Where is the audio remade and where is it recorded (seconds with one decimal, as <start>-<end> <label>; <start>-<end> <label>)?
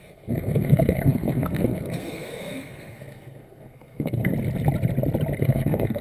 0.0-4.3 remade; 4.3-5.4 recorded; 5.4-6.0 remade